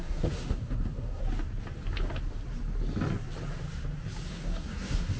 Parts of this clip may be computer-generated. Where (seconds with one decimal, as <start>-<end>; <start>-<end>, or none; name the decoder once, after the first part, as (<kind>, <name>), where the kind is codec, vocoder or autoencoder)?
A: 0.0-1.2 (codec, SNAC); 4.3-5.2